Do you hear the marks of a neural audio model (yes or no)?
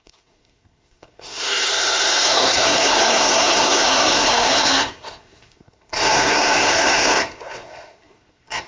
yes